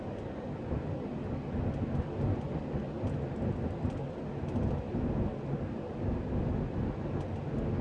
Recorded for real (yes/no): yes